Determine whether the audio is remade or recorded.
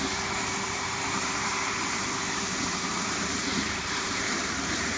remade